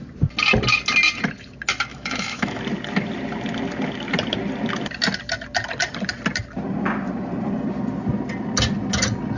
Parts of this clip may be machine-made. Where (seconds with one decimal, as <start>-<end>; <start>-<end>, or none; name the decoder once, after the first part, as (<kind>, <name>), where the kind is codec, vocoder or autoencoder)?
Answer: 1.9-2.6 (autoencoder, DAC-VAE)